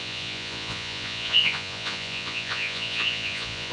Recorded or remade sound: remade